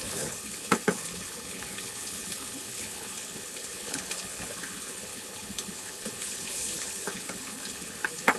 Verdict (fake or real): fake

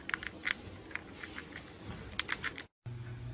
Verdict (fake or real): real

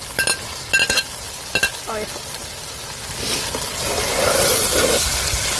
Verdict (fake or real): real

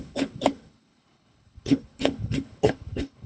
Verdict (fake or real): fake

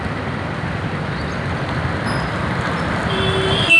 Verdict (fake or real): real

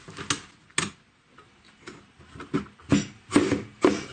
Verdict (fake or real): real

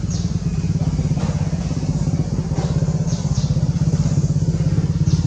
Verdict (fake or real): real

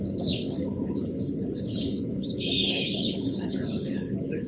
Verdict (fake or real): fake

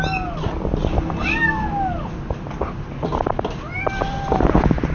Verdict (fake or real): real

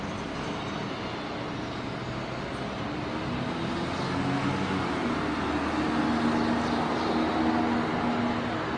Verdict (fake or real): real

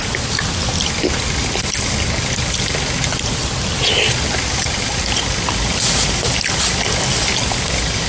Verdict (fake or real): real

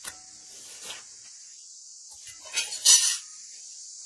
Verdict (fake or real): real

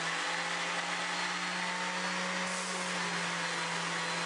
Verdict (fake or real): real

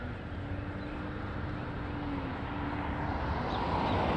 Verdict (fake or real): real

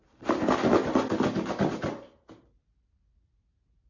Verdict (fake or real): real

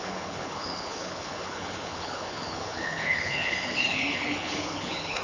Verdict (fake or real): fake